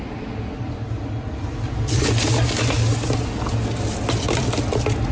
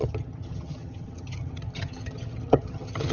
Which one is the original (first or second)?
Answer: first